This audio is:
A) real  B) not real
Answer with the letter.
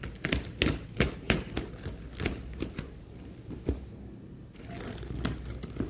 A